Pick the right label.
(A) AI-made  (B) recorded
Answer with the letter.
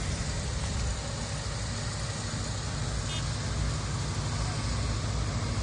B